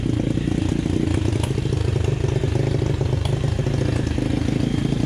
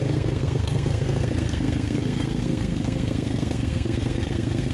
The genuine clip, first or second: first